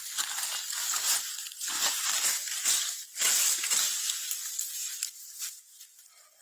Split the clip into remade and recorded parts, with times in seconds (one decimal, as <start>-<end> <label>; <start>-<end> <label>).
0.0-4.8 recorded; 4.8-5.8 remade; 5.8-6.4 recorded

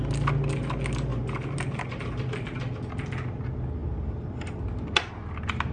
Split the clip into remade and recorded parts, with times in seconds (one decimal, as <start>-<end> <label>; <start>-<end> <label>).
0.0-5.7 recorded

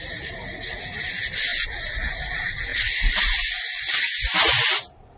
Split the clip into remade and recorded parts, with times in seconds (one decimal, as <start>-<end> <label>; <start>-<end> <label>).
0.0-2.7 recorded; 2.7-3.2 remade; 3.2-5.2 recorded

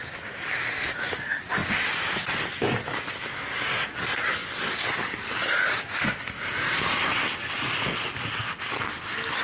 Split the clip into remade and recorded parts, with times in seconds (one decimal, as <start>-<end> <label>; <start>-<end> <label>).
0.0-9.4 recorded

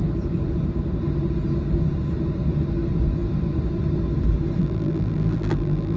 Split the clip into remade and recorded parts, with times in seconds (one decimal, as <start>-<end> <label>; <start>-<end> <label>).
0.0-4.6 recorded; 4.6-6.0 remade

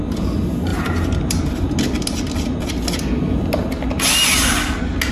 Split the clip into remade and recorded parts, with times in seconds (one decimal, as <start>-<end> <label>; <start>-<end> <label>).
0.0-0.7 recorded; 0.7-1.6 remade; 1.6-5.1 recorded

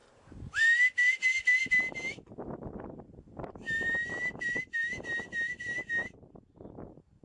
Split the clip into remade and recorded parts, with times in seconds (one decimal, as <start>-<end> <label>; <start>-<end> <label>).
0.0-3.0 recorded; 3.0-7.2 remade